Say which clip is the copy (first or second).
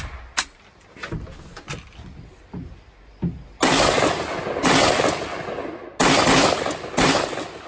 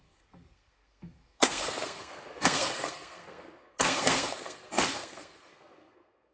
second